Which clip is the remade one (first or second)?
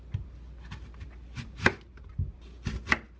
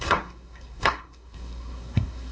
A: second